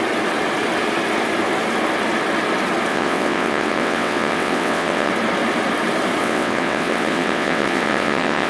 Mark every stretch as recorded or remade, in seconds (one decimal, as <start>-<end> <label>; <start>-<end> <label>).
0.0-2.9 recorded; 2.9-5.1 remade; 5.1-6.2 recorded; 6.2-8.5 remade